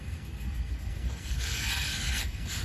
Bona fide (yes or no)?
no